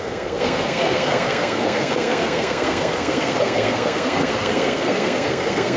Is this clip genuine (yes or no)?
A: no